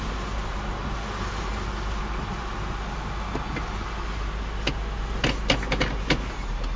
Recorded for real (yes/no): yes